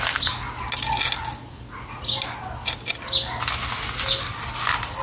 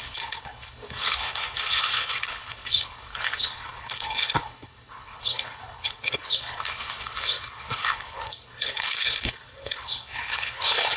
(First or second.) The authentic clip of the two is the first